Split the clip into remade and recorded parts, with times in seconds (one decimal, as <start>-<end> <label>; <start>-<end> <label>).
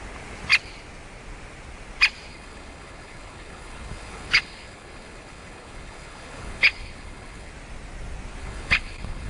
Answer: 0.0-2.3 recorded; 2.3-7.5 remade; 7.5-8.4 recorded; 8.4-9.3 remade